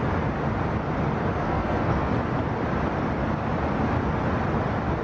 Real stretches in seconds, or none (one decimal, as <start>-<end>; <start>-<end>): 0.0-1.4; 2.1-5.0

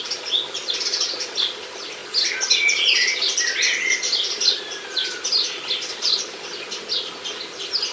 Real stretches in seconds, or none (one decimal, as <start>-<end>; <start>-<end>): 0.0-7.9

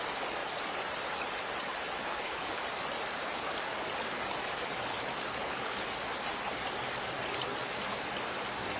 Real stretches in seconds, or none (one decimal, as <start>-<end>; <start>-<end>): 0.0-2.1; 2.6-5.3; 5.9-8.8

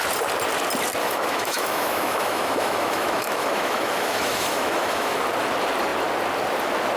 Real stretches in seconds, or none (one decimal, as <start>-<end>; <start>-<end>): 0.0-1.0; 5.2-7.0

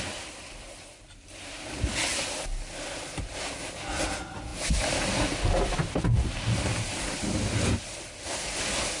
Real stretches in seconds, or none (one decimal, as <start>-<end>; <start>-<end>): 0.0-9.0